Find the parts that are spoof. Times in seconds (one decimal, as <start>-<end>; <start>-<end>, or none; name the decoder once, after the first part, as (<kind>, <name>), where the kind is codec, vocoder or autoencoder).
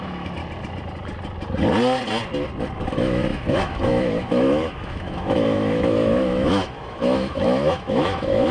0.0-0.4 (autoencoder, DAC-VAE); 2.9-8.5